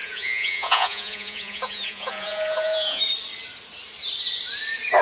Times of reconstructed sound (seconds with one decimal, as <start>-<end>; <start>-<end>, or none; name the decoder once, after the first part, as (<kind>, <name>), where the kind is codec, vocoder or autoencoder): 0.0-3.0 (vocoder, Vocos)